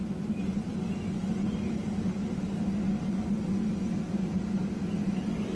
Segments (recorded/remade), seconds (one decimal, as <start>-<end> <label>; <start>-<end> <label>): 0.0-5.5 recorded